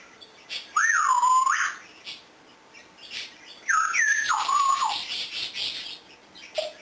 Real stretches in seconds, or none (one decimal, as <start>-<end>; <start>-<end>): 0.0-2.8; 5.5-6.8